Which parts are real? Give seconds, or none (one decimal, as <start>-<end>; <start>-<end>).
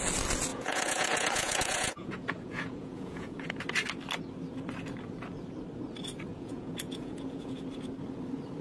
0.0-0.5; 3.5-6.3; 7.6-8.6